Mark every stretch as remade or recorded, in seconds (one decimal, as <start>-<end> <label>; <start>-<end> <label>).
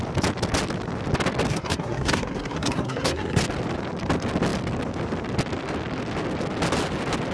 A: 0.0-1.5 recorded; 1.5-3.4 remade; 3.4-7.3 recorded